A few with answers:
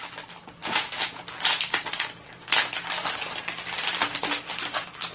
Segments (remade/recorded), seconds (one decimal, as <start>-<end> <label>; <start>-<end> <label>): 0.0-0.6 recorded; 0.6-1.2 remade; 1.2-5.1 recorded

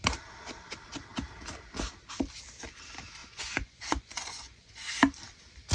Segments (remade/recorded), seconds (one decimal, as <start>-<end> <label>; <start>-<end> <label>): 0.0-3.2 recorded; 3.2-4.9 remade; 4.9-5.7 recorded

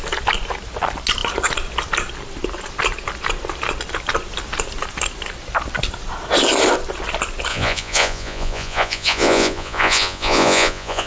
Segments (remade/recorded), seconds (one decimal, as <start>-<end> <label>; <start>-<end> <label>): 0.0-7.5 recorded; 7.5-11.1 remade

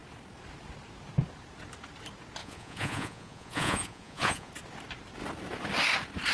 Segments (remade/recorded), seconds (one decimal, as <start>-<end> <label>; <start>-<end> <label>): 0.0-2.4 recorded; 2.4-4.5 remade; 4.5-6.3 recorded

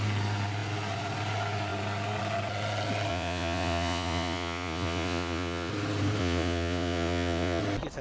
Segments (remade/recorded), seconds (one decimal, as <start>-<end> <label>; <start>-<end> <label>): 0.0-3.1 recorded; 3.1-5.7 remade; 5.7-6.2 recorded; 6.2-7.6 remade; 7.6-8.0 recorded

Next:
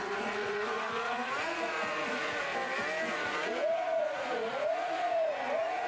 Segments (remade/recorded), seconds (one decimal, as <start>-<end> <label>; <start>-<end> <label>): 0.0-2.5 remade; 2.5-3.1 recorded; 3.1-5.9 remade